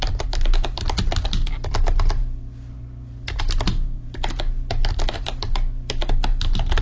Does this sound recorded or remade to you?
recorded